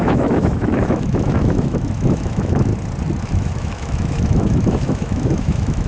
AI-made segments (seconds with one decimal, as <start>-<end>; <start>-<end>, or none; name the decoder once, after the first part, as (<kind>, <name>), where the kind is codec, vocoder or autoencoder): 0.0-2.7 (autoencoder, DAC-VAE); 3.2-5.9